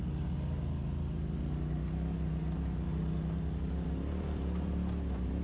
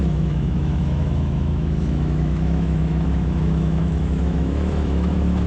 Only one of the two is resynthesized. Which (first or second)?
second